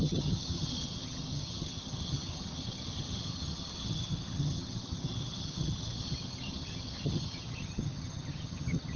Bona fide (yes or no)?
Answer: no